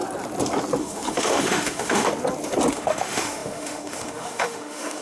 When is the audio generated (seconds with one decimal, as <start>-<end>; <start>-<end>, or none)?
0.8-2.1; 2.7-5.0